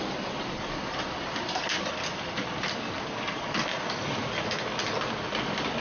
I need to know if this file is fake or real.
real